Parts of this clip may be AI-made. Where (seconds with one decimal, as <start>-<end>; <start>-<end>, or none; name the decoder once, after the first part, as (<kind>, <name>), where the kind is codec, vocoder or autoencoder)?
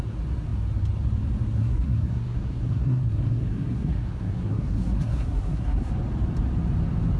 1.6-5.9 (codec, SNAC)